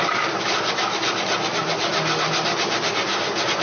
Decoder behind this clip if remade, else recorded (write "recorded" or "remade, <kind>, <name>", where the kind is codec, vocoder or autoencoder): recorded